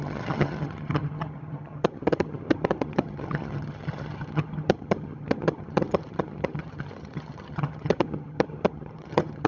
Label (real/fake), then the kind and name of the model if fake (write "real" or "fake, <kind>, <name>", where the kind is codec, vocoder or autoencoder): fake, vocoder, HiFi-GAN